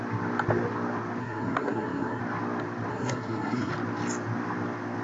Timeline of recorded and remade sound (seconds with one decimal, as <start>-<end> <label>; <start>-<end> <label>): 0.0-1.2 recorded; 1.2-2.2 remade; 2.2-2.9 recorded; 2.9-3.7 remade; 3.7-5.0 recorded